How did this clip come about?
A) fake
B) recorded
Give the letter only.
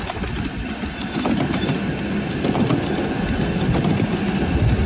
B